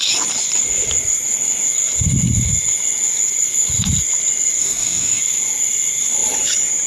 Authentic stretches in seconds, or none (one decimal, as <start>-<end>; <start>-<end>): 0.0-4.6; 5.2-6.9